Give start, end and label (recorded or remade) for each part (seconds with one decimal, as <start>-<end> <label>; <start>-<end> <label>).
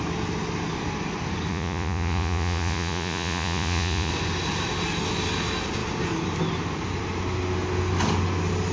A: 0.0-1.5 recorded; 1.5-4.1 remade; 4.1-8.7 recorded